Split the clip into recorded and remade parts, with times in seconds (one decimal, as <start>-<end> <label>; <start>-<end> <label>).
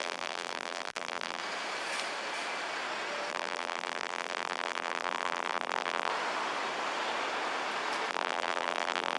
0.0-1.4 remade; 1.4-3.3 recorded; 3.3-6.1 remade; 6.1-8.1 recorded; 8.1-9.2 remade